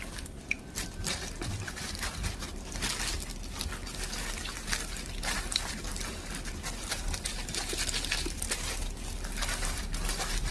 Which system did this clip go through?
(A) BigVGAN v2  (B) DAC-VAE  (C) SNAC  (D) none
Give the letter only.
A